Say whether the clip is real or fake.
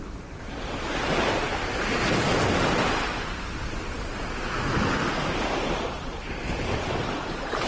real